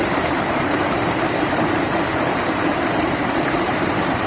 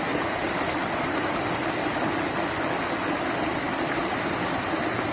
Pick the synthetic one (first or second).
first